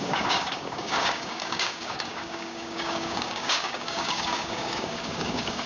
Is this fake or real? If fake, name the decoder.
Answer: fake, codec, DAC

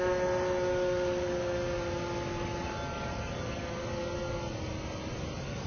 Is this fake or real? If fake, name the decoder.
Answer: real